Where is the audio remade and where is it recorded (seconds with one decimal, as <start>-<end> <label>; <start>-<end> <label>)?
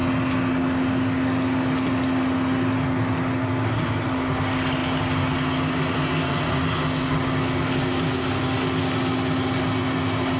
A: 0.0-10.4 recorded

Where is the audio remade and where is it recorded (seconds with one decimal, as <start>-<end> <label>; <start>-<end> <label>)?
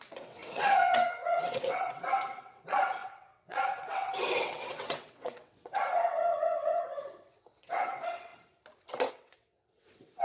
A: 0.0-8.3 remade; 8.3-9.1 recorded; 9.1-10.2 remade